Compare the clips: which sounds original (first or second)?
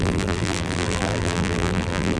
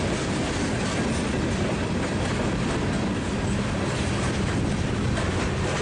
second